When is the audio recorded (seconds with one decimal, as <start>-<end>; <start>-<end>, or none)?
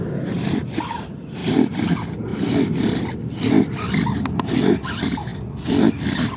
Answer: 0.0-1.4; 1.9-2.3; 3.1-6.4